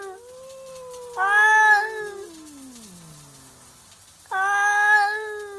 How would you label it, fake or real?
real